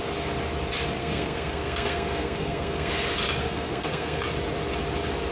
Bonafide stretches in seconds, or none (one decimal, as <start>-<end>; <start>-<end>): 0.0-1.0; 2.9-3.4; 4.2-5.3